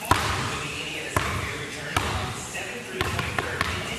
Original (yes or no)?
yes